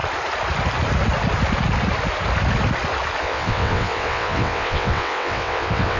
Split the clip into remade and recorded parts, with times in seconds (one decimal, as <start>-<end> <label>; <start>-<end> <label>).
0.0-3.2 recorded; 3.2-6.0 remade